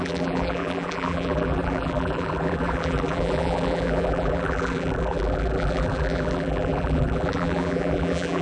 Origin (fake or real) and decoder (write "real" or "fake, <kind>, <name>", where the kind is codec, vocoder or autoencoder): fake, vocoder, BigVGAN v2